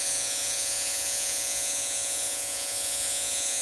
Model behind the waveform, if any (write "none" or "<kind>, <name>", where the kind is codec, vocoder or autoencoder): vocoder, Vocos